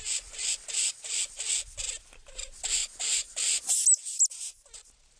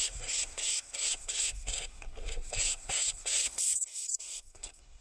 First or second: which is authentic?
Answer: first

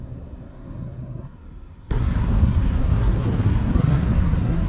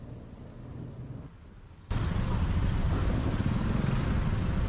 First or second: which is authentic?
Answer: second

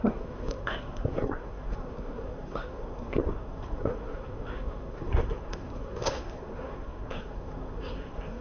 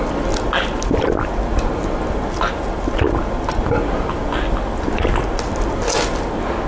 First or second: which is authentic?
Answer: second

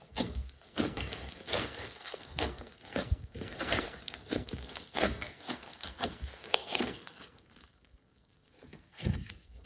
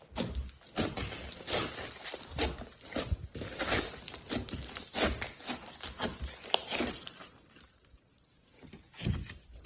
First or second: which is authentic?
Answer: second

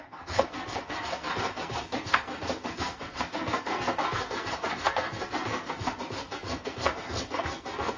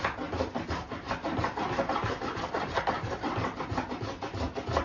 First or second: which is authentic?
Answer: second